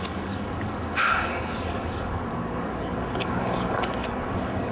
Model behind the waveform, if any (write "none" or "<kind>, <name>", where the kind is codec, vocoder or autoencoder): codec, DAC